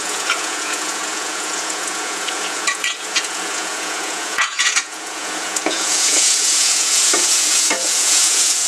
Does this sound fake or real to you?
fake